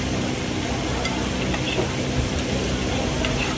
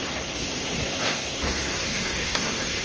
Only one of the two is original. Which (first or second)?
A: first